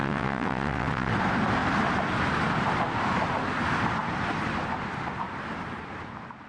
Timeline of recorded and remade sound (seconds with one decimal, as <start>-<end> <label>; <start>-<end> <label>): 0.0-1.1 remade; 1.1-6.5 recorded